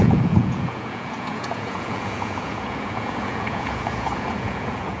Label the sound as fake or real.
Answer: fake